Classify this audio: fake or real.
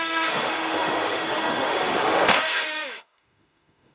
fake